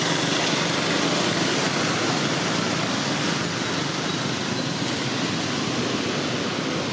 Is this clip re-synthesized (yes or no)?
no